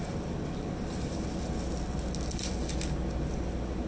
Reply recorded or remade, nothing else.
recorded